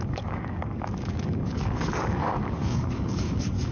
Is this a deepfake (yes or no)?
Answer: yes